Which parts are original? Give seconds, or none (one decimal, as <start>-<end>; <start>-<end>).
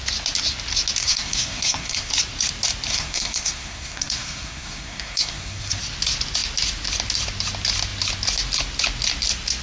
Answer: 0.0-1.0; 2.1-2.9; 5.8-9.6